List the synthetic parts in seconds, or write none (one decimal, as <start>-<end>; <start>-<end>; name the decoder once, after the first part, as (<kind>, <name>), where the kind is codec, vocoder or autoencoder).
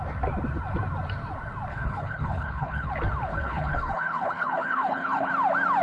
1.7-2.9 (codec, HILCodec); 3.3-5.3